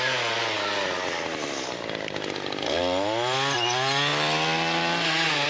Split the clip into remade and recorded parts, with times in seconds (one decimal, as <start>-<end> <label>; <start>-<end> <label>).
0.0-5.5 recorded

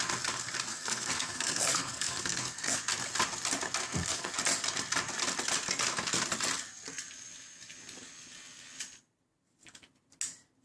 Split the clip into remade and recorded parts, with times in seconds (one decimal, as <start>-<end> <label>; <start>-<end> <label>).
0.0-0.7 recorded; 0.7-2.8 remade; 2.8-3.8 recorded; 3.8-4.3 remade; 4.3-10.6 recorded

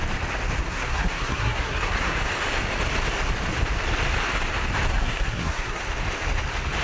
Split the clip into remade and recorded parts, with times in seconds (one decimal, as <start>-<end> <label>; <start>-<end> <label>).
0.0-0.6 recorded; 0.6-2.2 remade; 2.2-4.9 recorded; 4.9-5.8 remade; 5.8-6.8 recorded

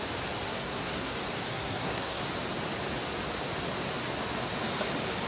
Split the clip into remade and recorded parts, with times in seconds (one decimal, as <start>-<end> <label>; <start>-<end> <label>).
0.0-0.5 recorded; 0.5-1.1 remade; 1.1-1.5 recorded; 1.5-2.3 remade; 2.3-5.3 recorded

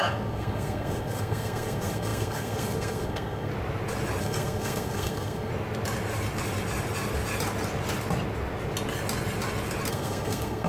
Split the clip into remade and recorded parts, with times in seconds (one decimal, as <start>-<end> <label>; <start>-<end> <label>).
0.0-3.5 remade; 3.5-4.2 recorded; 4.2-5.5 remade; 5.5-9.9 recorded; 9.9-10.7 remade

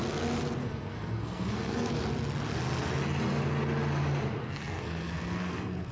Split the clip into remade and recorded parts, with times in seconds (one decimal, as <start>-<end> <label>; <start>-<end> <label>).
0.0-0.6 recorded; 0.6-1.9 remade; 1.9-4.4 recorded; 4.4-5.9 remade

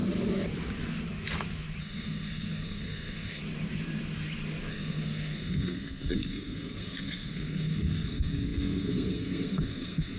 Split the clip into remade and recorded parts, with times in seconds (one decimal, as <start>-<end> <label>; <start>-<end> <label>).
0.0-1.8 recorded; 1.8-3.4 remade; 3.4-4.7 recorded; 4.7-10.2 remade